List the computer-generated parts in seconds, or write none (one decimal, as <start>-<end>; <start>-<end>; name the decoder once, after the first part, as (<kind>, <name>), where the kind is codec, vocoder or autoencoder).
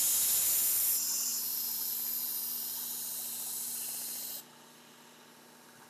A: none